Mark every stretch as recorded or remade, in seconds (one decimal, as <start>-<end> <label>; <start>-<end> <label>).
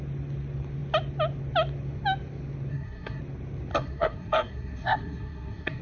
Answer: 0.0-2.7 recorded; 2.7-3.2 remade; 3.2-3.7 recorded; 3.7-5.8 remade